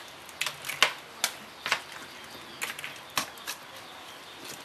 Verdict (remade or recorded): recorded